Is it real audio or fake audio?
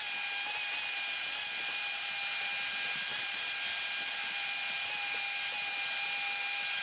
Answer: real